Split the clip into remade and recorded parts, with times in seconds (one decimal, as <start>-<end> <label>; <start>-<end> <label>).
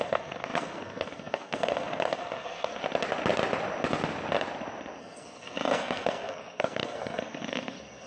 0.0-2.8 remade; 2.8-5.0 recorded; 5.0-8.1 remade